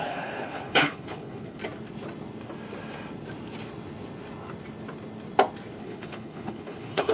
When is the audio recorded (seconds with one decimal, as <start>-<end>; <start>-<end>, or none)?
1.6-5.8